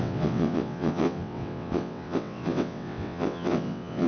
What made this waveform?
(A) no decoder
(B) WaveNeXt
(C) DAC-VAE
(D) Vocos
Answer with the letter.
B